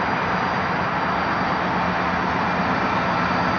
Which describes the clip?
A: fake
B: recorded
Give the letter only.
B